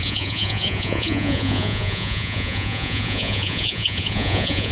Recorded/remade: remade